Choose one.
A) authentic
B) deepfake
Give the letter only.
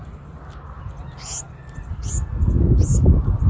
A